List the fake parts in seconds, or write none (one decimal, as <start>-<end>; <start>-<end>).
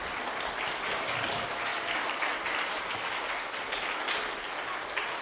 none